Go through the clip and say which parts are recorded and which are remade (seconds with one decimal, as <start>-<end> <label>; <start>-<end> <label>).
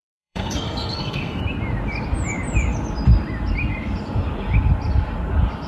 0.0-1.4 remade; 1.4-5.7 recorded